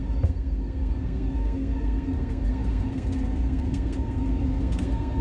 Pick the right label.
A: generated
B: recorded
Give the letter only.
A